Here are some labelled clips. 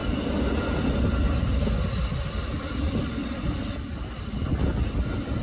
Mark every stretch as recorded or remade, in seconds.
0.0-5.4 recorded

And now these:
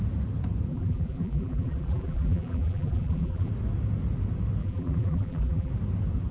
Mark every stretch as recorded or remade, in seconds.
0.0-0.7 recorded; 0.7-3.5 remade; 3.5-4.6 recorded; 4.6-5.7 remade; 5.7-6.3 recorded

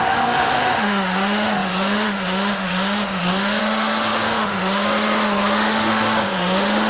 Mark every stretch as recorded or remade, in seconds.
0.0-6.9 remade

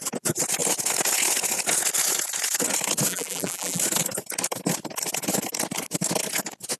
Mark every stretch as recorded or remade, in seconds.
0.0-3.1 recorded; 3.1-3.8 remade; 3.8-6.8 recorded

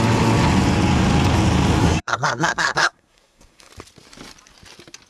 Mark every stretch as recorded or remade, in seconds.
0.0-1.8 recorded; 1.8-3.7 remade; 3.7-5.1 recorded

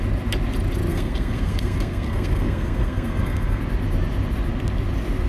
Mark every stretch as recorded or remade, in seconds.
0.0-0.9 recorded; 0.9-3.6 remade; 3.6-5.3 recorded